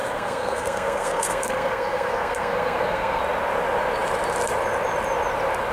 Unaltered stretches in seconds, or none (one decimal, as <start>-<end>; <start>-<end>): 3.2-5.7